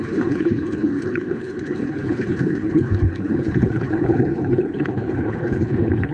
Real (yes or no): no